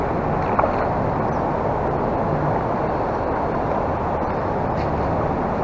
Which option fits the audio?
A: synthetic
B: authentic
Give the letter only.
B